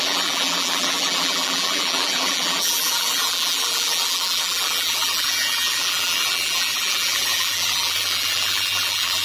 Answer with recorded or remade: remade